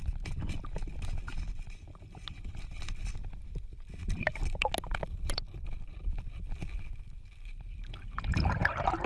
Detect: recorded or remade recorded